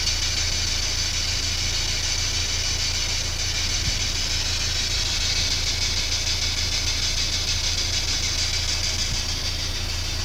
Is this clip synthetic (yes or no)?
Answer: no